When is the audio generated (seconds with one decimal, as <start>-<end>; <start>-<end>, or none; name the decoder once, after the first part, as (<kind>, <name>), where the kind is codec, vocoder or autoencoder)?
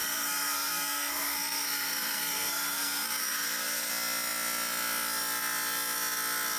0.0-3.9 (codec, SNAC)